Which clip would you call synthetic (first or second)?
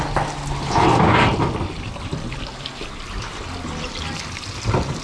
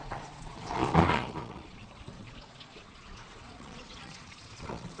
second